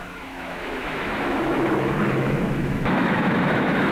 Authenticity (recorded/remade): remade